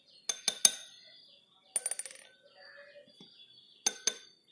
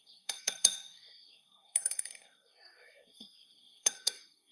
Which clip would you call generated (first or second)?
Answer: second